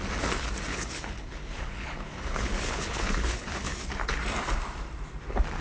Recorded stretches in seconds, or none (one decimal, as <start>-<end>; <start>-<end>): 0.0-0.7; 3.9-5.6